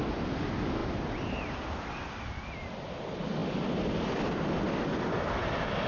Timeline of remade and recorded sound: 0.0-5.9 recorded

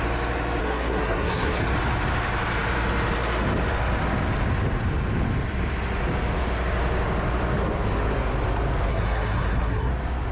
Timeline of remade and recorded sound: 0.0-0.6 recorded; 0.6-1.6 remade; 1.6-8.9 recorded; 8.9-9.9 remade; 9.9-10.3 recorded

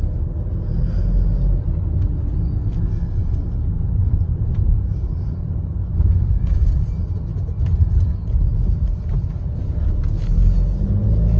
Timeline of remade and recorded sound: 0.0-3.2 recorded; 3.2-5.7 remade; 5.7-11.4 recorded

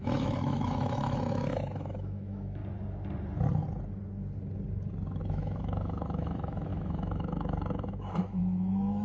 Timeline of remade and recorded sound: 0.0-2.6 remade; 2.6-5.2 recorded; 5.2-9.0 remade

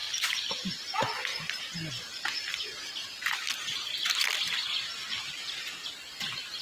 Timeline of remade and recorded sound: 0.0-0.5 remade; 0.5-1.3 recorded; 1.3-1.9 remade; 1.9-6.6 recorded